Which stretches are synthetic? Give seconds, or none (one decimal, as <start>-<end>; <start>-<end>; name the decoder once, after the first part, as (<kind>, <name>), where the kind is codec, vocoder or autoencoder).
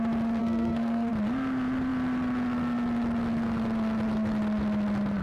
0.4-1.1 (codec, SNAC)